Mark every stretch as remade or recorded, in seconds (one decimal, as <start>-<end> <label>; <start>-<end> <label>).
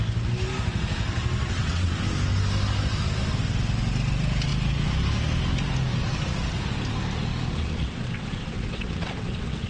0.0-1.4 recorded; 1.4-2.0 remade; 2.0-7.6 recorded; 7.6-9.7 remade